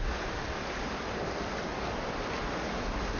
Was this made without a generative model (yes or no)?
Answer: yes